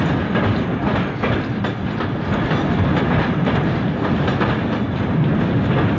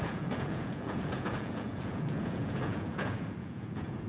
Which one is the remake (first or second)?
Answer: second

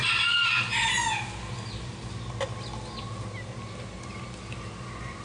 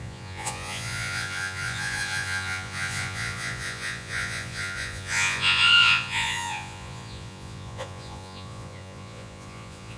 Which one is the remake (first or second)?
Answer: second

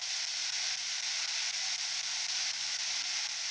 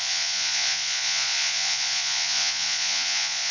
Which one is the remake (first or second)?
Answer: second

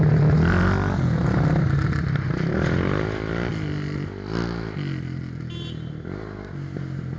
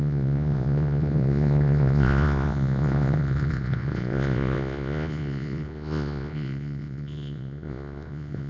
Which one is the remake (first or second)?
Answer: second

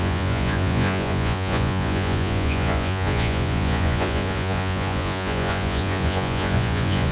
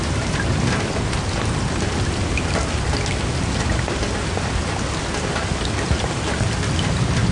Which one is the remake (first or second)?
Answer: first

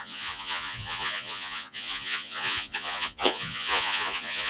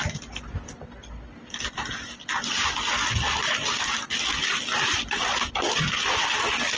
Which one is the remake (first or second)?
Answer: first